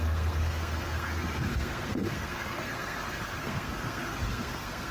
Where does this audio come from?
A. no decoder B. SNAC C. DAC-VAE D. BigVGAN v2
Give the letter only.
B